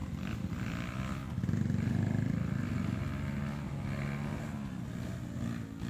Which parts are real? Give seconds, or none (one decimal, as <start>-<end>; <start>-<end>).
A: 0.0-5.9